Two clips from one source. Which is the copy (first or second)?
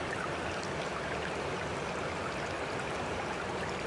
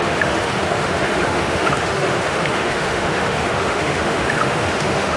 second